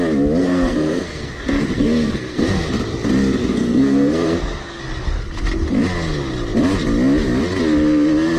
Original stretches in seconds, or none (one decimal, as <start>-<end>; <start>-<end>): 0.0-0.4; 2.7-3.4; 4.8-8.4